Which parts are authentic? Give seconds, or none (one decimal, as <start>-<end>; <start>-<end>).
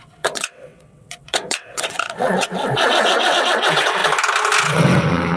4.0-4.6